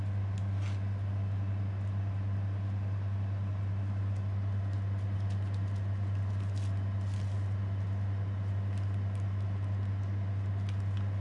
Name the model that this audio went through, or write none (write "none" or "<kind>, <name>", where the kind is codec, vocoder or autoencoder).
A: none